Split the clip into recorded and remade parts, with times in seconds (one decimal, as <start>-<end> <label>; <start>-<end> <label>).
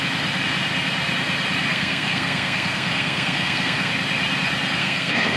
0.0-1.7 recorded; 1.7-3.9 remade; 3.9-4.8 recorded; 4.8-5.4 remade